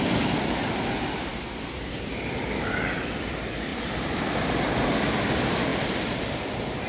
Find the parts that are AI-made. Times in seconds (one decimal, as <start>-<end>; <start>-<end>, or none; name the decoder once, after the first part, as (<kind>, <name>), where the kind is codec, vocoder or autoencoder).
1.3-1.9 (vocoder, BigVGAN v2); 3.7-4.2